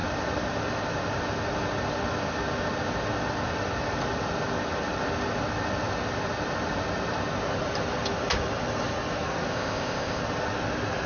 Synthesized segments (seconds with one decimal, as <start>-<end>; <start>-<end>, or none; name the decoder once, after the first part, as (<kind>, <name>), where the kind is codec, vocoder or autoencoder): 9.5-10.2 (codec, ZipCodec)